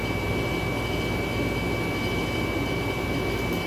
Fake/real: real